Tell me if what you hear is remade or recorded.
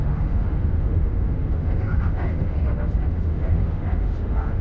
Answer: remade